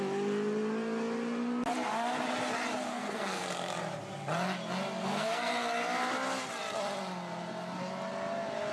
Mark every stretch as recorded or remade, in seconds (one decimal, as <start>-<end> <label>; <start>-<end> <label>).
0.0-2.9 recorded; 2.9-3.7 remade; 3.7-5.0 recorded; 5.0-5.5 remade; 5.5-8.7 recorded